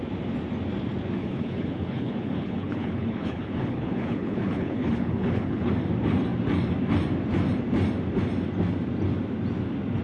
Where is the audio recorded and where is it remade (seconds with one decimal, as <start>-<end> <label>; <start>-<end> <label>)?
0.0-1.2 recorded; 1.2-5.7 remade; 5.7-10.0 recorded